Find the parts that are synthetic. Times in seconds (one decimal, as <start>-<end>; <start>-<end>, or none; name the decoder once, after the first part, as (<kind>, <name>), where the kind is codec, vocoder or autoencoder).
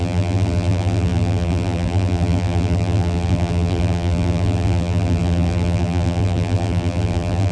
0.0-7.5 (vocoder, BigVGAN v2)